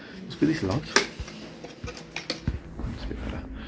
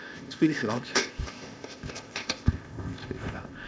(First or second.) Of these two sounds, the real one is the first